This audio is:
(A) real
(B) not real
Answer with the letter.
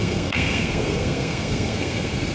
B